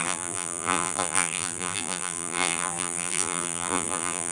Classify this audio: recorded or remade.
remade